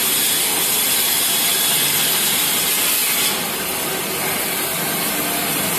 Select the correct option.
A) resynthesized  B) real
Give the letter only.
B